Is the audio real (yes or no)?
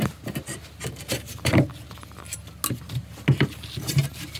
yes